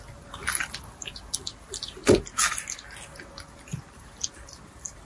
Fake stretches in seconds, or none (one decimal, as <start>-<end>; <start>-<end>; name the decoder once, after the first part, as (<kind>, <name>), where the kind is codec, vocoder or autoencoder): none